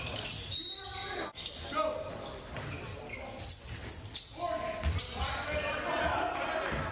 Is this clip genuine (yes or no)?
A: yes